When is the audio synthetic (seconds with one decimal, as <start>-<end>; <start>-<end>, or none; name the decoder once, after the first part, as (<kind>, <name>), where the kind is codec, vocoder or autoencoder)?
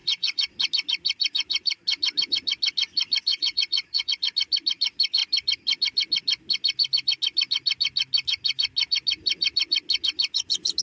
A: 0.0-0.6 (vocoder, Vocos); 3.3-4.1